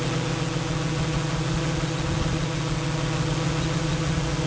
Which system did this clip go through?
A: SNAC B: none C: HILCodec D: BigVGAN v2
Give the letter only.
B